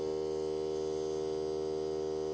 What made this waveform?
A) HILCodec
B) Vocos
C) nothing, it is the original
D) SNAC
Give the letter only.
C